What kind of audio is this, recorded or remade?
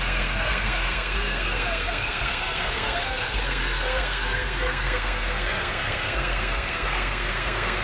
remade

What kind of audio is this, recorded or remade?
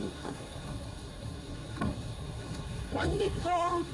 remade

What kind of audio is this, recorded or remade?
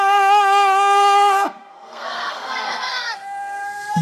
remade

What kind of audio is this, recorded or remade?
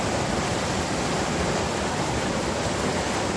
recorded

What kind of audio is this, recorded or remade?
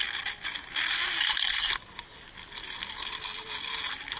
recorded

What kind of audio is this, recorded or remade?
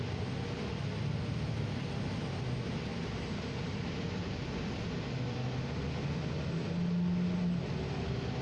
recorded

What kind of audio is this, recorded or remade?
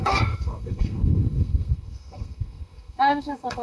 remade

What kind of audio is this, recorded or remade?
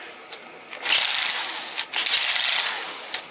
recorded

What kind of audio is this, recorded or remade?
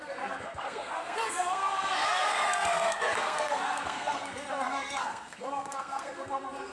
remade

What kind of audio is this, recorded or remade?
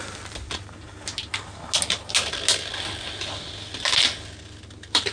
recorded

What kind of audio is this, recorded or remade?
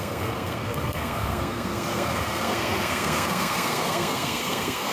remade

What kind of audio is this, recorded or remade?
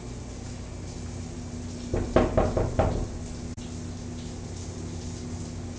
recorded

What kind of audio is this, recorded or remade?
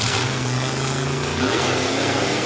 remade